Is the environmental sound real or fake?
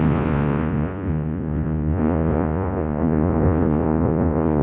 fake